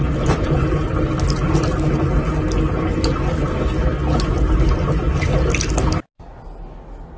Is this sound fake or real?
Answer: real